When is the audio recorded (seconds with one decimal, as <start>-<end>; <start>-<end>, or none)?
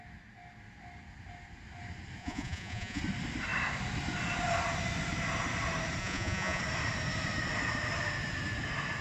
0.0-2.2; 3.0-6.0; 6.6-9.0